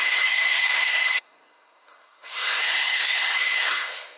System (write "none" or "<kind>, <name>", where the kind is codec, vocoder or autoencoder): codec, SNAC